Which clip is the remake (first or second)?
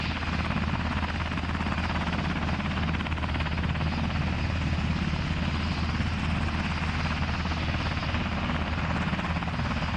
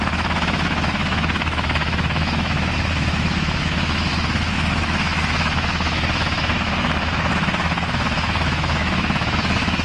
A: second